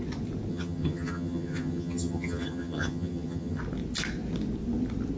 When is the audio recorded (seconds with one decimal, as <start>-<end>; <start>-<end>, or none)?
0.0-0.5; 3.6-5.2